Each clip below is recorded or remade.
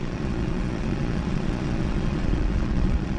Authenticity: remade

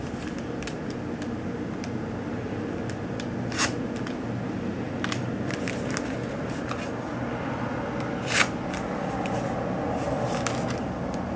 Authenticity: recorded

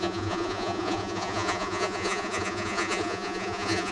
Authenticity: remade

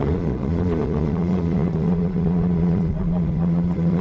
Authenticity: remade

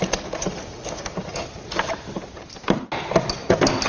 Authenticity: recorded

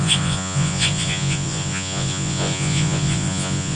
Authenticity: remade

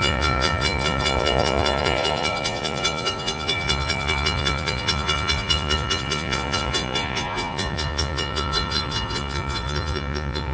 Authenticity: remade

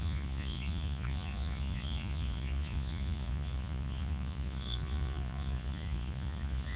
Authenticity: remade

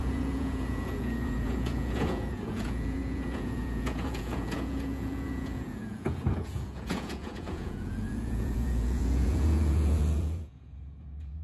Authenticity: remade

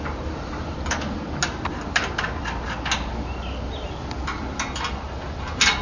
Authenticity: recorded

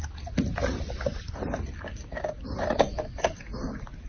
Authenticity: recorded